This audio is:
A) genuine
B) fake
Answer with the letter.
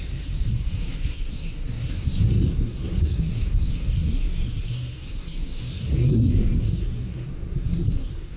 B